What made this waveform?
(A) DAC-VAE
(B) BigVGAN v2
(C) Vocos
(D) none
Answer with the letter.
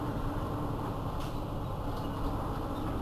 D